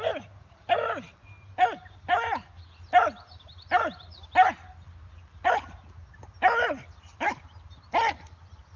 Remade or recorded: recorded